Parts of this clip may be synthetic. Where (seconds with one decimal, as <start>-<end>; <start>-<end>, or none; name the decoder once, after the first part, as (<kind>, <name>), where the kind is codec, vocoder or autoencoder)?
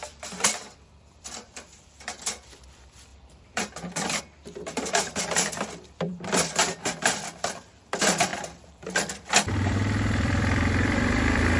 0.0-11.6 (vocoder, BigVGAN v2)